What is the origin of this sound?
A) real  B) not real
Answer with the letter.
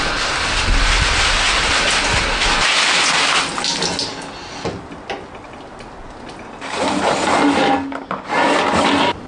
A